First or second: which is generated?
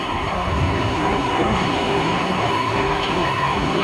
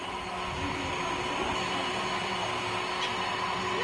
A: first